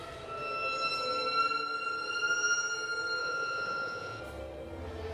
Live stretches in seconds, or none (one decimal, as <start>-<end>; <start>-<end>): 0.0-3.2; 4.2-5.1